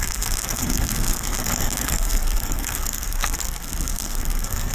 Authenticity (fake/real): fake